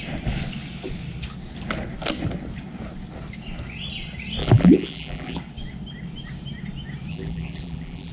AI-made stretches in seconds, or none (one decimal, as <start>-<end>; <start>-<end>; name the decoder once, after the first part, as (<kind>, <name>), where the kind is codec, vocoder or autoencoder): 4.4-5.4 (vocoder, BigVGAN v2); 7.1-8.1